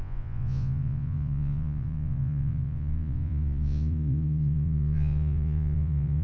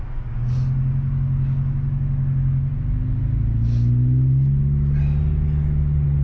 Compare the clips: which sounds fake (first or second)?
first